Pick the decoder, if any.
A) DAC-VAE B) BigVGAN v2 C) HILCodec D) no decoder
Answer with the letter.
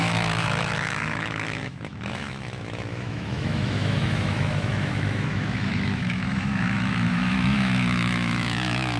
A